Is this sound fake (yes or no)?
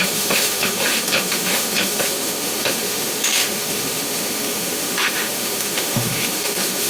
yes